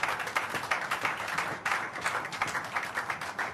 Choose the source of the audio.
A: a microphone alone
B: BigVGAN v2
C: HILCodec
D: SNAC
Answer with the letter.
A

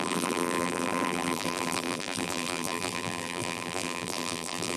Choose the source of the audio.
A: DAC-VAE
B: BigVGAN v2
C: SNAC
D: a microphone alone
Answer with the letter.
B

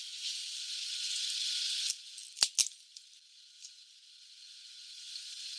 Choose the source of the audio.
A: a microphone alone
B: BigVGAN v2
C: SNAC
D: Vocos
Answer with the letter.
A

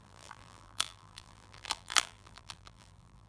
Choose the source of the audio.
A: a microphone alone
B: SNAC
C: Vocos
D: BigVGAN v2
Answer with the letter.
D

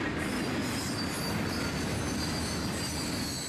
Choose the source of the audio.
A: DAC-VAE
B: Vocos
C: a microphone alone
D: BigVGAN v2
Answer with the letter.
C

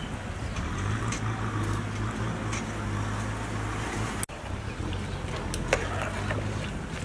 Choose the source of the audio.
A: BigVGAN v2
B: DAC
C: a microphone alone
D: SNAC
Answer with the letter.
C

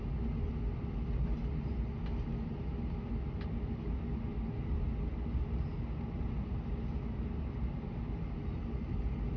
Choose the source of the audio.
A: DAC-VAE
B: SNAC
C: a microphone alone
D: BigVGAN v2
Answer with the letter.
C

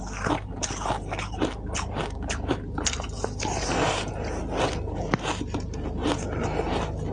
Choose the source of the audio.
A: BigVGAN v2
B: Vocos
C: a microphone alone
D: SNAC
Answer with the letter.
C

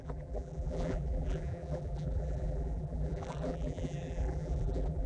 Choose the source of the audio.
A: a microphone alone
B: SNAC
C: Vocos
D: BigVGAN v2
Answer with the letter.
D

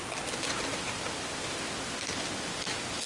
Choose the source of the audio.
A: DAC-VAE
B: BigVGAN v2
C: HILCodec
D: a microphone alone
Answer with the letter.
D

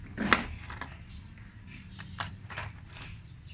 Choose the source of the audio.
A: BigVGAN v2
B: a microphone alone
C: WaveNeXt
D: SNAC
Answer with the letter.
B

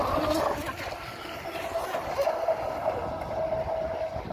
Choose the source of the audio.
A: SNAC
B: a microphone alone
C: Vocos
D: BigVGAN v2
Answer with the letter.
B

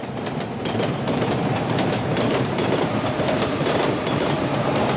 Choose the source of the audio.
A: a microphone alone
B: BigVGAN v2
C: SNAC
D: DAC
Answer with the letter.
B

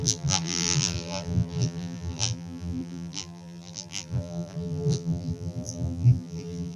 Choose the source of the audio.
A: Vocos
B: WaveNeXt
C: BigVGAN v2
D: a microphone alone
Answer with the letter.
C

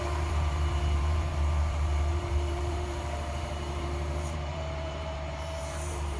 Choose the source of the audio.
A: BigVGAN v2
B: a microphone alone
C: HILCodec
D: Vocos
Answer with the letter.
A